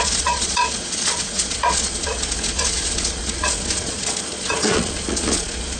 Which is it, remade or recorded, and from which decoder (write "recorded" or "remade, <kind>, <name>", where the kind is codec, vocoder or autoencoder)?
remade, vocoder, Vocos